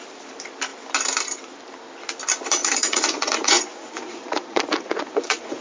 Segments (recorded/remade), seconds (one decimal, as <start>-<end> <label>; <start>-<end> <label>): 0.0-2.6 recorded; 2.6-5.6 remade